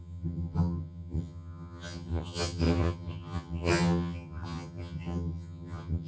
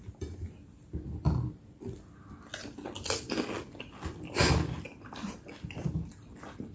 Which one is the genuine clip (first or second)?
second